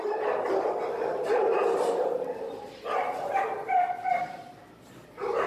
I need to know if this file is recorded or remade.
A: remade